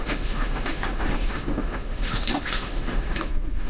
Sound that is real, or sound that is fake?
fake